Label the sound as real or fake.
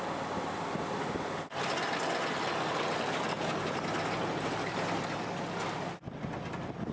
real